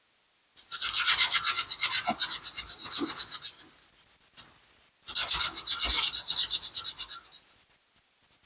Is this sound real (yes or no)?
yes